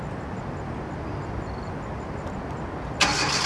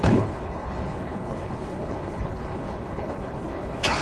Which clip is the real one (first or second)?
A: first